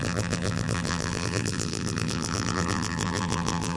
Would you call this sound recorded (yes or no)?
no